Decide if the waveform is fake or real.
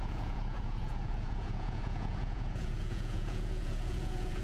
fake